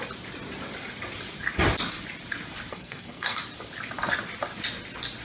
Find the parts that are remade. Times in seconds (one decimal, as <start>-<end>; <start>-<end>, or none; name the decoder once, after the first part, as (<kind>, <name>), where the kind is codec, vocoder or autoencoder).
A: 2.7-3.4 (codec, SNAC)